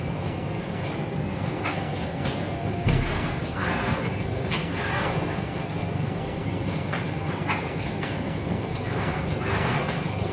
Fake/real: fake